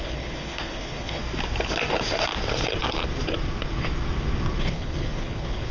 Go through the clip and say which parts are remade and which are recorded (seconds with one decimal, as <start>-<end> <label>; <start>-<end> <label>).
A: 0.0-1.2 remade; 1.2-4.6 recorded; 4.6-5.7 remade